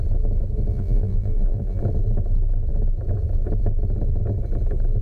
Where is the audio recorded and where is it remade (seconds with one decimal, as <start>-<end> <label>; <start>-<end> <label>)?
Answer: 0.0-0.7 recorded; 0.7-1.8 remade; 1.8-5.0 recorded